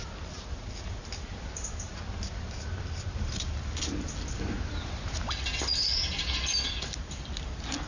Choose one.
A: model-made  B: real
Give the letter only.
A